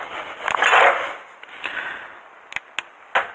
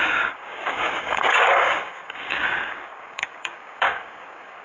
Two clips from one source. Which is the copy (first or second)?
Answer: second